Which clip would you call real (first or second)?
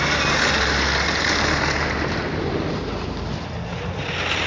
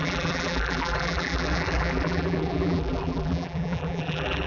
first